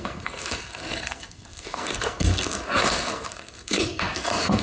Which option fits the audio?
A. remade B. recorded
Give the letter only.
A